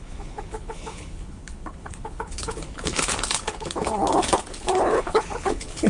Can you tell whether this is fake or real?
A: fake